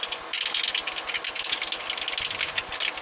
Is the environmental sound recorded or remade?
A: recorded